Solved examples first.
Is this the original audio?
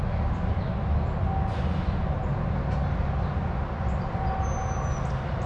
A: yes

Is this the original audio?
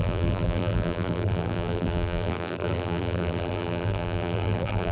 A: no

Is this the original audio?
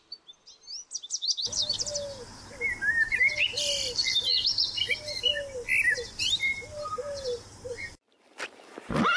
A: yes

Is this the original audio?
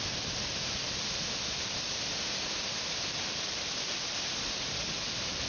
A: no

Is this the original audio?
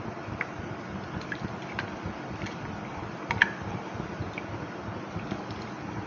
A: no